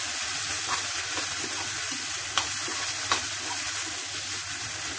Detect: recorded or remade recorded